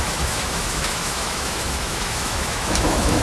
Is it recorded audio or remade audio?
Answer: remade